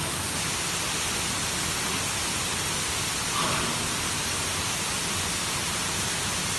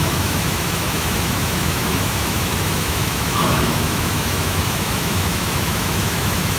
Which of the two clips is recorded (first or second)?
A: first